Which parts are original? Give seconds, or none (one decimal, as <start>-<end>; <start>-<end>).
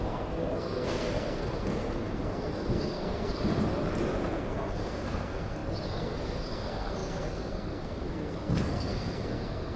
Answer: 3.4-4.2